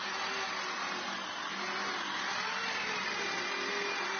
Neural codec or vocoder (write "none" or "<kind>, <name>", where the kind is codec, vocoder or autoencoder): none